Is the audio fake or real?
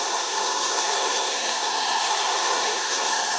fake